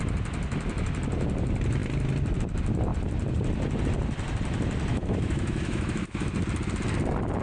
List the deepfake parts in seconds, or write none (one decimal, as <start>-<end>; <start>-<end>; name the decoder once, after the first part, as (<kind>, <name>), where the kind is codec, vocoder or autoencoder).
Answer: 4.9-6.3 (autoencoder, DAC-VAE)